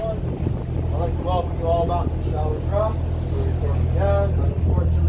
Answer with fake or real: real